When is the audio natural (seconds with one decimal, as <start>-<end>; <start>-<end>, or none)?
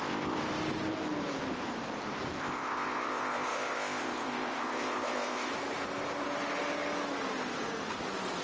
0.4-2.4; 5.5-8.4